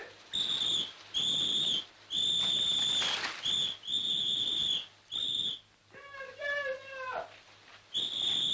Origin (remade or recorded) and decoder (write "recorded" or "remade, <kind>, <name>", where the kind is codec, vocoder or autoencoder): recorded